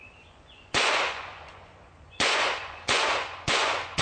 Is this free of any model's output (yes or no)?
no